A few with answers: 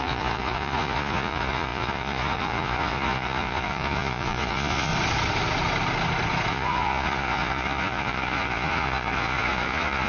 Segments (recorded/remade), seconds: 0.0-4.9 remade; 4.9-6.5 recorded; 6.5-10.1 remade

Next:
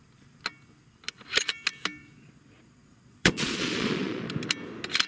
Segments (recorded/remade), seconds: 0.0-2.0 recorded; 2.0-4.3 remade; 4.3-5.1 recorded

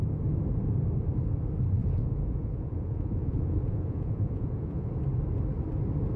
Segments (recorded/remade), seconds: 0.0-1.8 recorded; 1.8-4.9 remade; 4.9-6.2 recorded

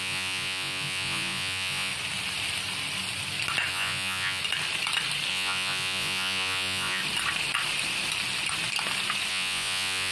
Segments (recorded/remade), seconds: 0.0-1.9 remade; 1.9-3.7 recorded; 3.7-4.4 remade; 4.4-5.3 recorded; 5.3-7.0 remade; 7.0-9.3 recorded; 9.3-10.1 remade

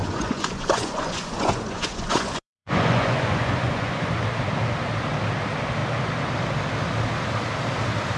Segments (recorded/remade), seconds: 0.0-4.2 remade; 4.2-8.2 recorded